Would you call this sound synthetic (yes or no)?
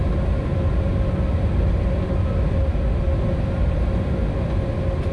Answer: no